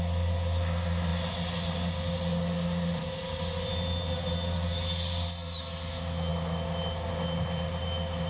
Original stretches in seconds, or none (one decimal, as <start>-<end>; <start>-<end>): 0.0-8.3